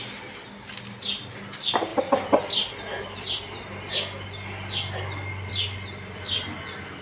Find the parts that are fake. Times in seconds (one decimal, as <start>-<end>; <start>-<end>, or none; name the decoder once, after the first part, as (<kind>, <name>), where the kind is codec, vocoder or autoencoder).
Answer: none